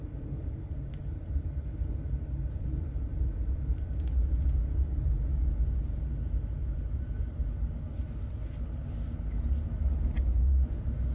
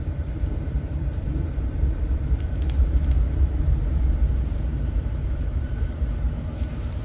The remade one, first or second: second